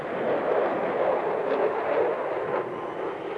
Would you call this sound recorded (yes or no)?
yes